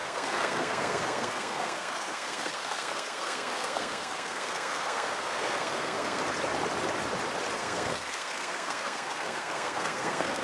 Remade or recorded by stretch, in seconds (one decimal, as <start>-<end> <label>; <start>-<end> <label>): 0.0-6.2 remade; 6.2-7.6 recorded; 7.6-10.4 remade

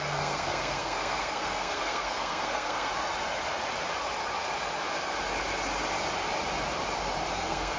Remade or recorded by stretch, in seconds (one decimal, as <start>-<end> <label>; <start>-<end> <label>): 0.0-2.9 remade; 2.9-7.3 recorded; 7.3-7.8 remade

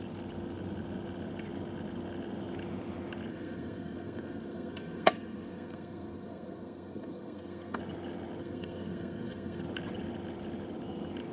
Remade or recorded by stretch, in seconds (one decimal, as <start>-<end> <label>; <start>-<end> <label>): 0.0-3.3 recorded; 3.3-7.8 remade; 7.8-8.4 recorded; 8.4-9.6 remade; 9.6-11.3 recorded

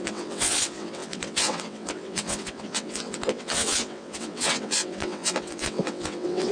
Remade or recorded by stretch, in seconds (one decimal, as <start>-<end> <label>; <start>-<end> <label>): 0.0-6.5 remade

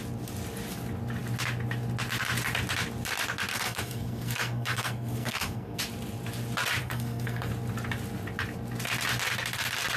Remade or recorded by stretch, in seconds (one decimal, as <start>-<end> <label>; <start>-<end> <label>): 0.0-3.5 recorded; 3.5-5.8 remade; 5.8-6.8 recorded; 6.8-7.5 remade; 7.5-10.0 recorded

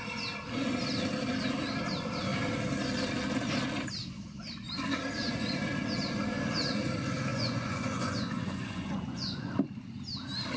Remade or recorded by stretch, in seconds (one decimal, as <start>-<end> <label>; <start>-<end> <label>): 0.0-7.3 recorded; 7.3-9.5 remade; 9.5-10.6 recorded

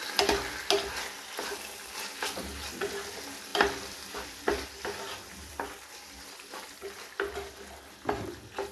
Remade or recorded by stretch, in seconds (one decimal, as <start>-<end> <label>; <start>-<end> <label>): 0.0-3.5 recorded; 3.5-7.0 remade; 7.0-8.7 recorded

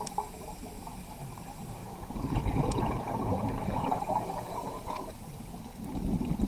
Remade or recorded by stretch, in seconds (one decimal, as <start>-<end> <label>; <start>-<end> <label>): 0.0-1.8 recorded; 1.8-5.1 remade; 5.1-6.5 recorded